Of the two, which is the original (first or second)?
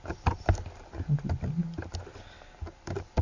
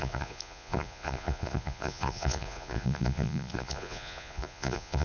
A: first